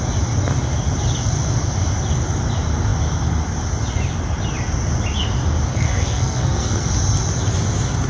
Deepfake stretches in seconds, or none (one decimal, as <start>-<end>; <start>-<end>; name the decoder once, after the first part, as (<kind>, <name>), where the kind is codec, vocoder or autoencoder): 5.7-6.9 (codec, SNAC)